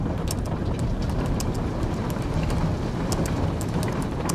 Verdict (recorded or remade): recorded